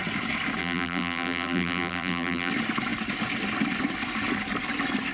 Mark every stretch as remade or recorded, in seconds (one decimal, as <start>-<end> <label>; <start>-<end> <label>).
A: 0.0-0.6 recorded; 0.6-2.5 remade; 2.5-5.1 recorded